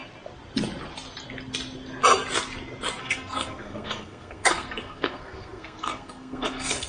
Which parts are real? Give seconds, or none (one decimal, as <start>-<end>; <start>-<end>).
0.0-3.0